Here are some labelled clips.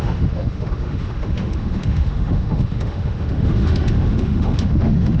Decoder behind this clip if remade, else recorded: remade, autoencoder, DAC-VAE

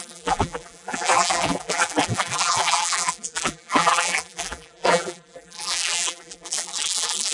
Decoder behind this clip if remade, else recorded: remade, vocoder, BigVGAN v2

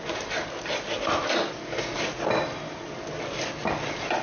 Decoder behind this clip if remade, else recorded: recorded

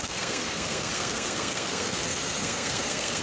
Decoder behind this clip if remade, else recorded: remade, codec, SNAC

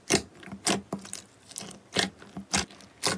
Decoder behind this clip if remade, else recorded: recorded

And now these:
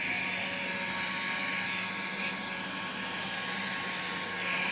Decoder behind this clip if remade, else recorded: recorded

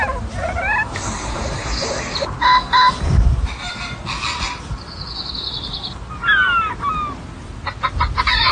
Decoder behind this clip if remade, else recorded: recorded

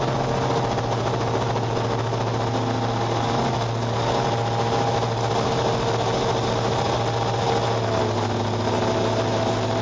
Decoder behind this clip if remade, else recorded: recorded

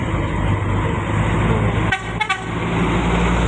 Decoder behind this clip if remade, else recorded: recorded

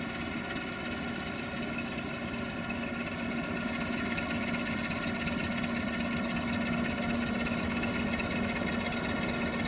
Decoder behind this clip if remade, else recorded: recorded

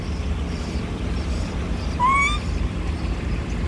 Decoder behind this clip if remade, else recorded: remade, vocoder, BigVGAN v2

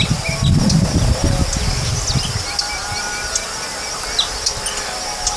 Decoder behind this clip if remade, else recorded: recorded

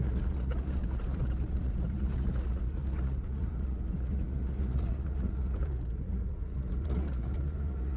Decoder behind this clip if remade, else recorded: remade, vocoder, Vocos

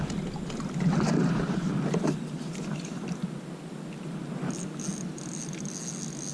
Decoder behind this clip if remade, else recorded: recorded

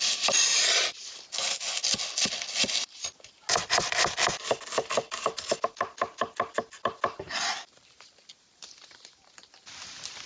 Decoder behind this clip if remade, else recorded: recorded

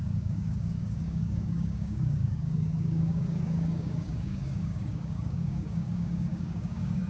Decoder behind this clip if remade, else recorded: remade, codec, DAC